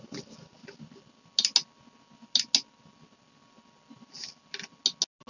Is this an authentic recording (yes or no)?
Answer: yes